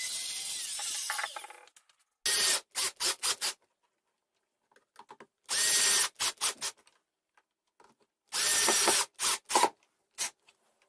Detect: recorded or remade recorded